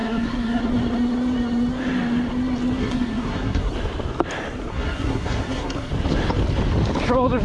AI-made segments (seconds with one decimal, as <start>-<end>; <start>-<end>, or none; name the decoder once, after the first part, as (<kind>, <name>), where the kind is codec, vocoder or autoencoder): 0.0-0.6 (codec, SNAC); 2.8-3.7; 4.7-5.9